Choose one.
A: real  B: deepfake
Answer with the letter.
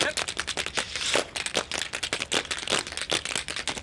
A